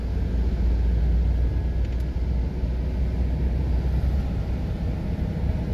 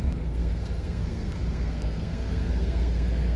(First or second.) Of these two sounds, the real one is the first